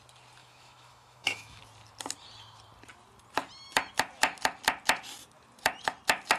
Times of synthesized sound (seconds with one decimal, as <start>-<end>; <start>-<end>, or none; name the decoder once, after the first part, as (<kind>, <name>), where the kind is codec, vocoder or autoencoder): 0.4-1.6 (autoencoder, DAC-VAE)